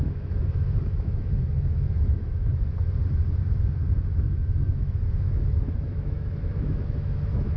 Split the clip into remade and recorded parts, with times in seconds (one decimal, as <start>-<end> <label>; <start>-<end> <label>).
0.0-2.5 remade; 2.5-4.0 recorded; 4.0-7.6 remade